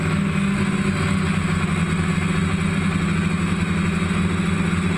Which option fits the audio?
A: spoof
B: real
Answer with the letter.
B